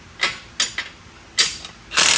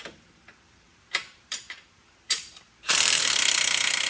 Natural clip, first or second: first